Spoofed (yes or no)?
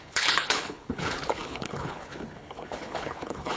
yes